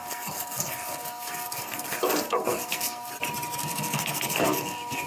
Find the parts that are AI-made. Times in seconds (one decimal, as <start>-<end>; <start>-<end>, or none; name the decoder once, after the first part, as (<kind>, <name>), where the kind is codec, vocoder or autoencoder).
0.0-3.1 (codec, SNAC); 3.6-5.1